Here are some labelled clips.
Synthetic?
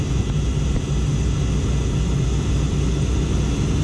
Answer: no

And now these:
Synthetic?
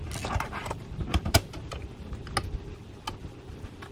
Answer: no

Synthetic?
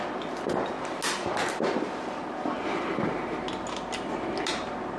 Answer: no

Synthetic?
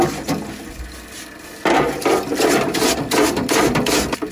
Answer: no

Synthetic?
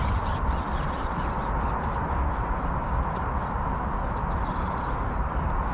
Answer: no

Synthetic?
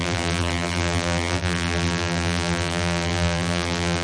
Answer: yes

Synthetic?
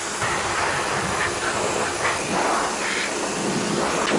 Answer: yes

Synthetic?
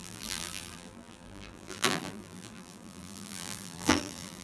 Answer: yes